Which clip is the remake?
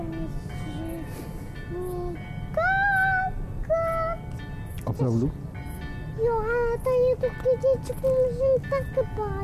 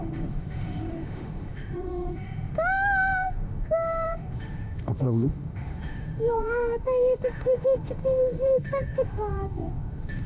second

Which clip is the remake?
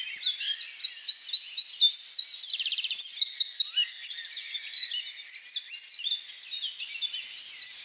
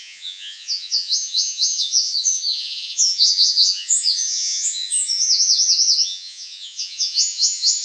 second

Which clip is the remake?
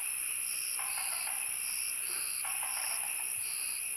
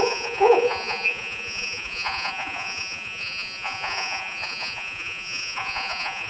second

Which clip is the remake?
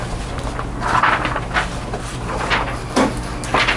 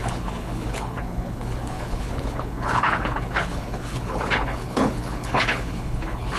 second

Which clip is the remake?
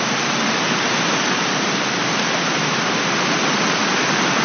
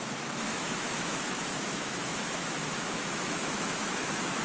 second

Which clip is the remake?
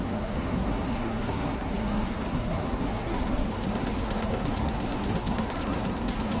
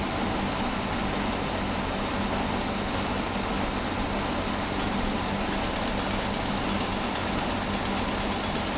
first